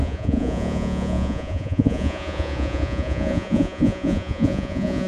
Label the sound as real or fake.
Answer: fake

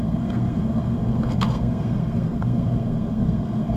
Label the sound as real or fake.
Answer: fake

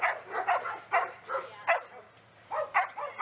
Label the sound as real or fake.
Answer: real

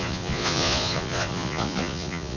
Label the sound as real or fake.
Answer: fake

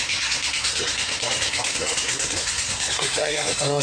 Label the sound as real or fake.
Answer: fake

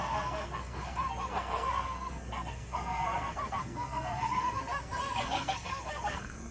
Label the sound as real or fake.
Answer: fake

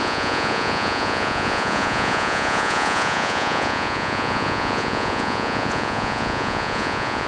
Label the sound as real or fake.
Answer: fake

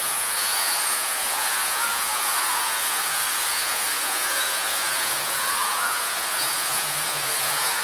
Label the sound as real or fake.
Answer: fake